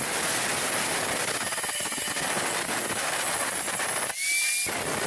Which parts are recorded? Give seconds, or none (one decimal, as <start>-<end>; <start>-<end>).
0.0-0.5; 3.0-5.1